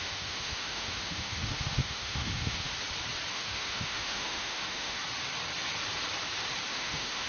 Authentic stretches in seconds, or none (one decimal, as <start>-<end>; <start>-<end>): 2.7-3.3; 5.0-6.7